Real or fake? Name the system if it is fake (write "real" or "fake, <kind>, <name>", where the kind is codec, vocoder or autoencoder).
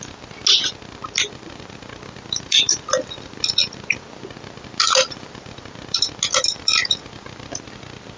real